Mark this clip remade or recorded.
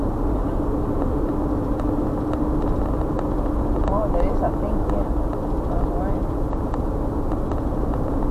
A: recorded